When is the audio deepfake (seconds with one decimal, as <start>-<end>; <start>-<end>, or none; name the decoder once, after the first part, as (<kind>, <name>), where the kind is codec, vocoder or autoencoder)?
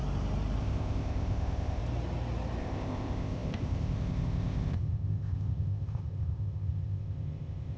0.6-1.8 (codec, ZipCodec); 2.6-7.8